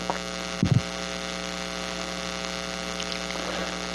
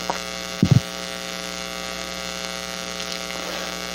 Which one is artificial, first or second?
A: second